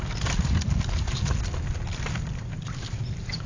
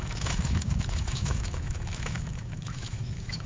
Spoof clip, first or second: second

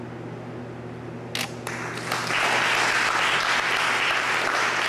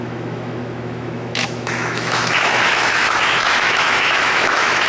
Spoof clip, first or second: second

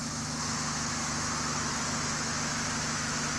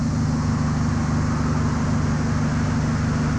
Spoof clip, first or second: first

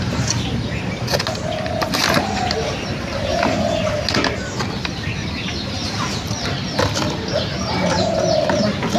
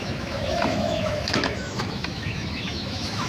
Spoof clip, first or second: second